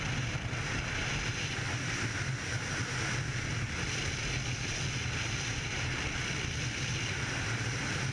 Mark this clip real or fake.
real